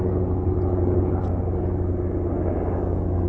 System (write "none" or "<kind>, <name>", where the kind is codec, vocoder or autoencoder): none